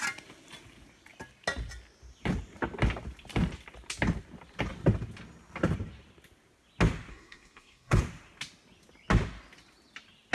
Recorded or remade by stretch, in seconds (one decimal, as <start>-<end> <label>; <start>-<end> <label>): 0.0-7.1 recorded; 7.1-8.0 remade; 8.0-10.3 recorded